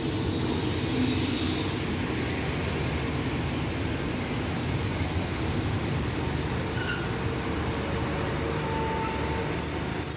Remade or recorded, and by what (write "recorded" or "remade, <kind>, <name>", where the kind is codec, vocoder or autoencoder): recorded